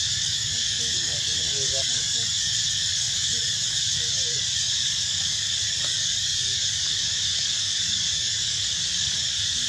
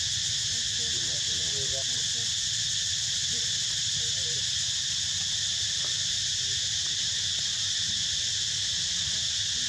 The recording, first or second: second